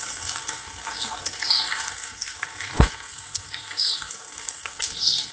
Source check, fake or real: fake